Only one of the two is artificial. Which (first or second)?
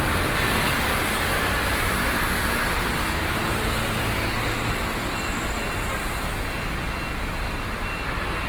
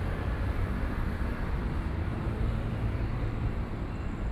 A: second